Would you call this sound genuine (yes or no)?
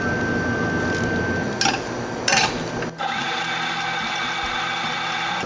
yes